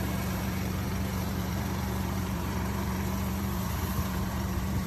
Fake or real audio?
fake